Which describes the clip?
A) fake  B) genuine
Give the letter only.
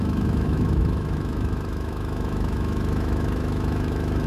A